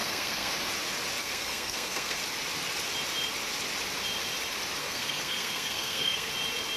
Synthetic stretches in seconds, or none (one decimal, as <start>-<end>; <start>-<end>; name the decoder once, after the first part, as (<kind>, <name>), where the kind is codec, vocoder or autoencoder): 0.0-0.5 (codec, SNAC); 1.2-2.2; 4.8-6.3